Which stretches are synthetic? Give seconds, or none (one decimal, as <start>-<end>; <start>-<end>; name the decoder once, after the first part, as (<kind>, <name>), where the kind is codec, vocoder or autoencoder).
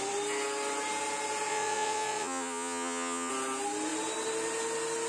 1.5-3.3 (vocoder, Vocos)